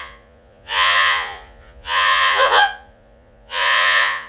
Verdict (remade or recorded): remade